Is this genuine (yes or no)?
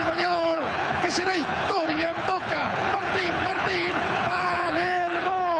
no